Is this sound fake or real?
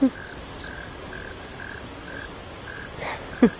real